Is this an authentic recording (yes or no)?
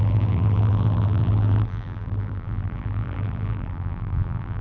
no